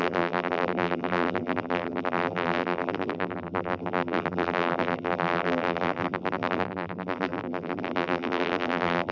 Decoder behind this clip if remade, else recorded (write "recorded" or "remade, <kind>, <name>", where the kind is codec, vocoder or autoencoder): remade, vocoder, BigVGAN v2